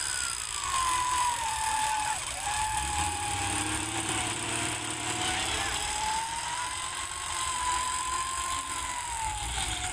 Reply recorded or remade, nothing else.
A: remade